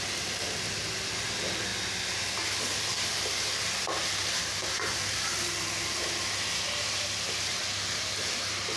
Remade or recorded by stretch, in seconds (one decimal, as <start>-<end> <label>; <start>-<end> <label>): 0.0-8.8 recorded

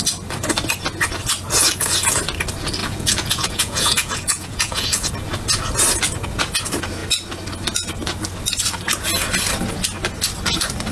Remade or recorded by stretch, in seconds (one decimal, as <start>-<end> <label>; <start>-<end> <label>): 0.0-2.8 recorded; 2.8-5.1 remade; 5.1-10.9 recorded

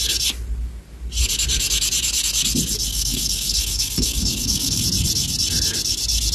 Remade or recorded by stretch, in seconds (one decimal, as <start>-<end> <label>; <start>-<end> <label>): 0.0-2.9 recorded; 2.9-4.8 remade; 4.8-6.3 recorded